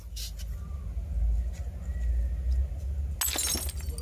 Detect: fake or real real